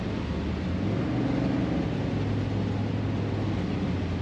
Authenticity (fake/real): real